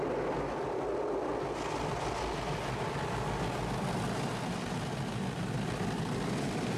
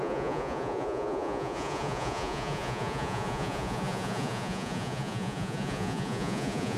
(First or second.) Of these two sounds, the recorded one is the first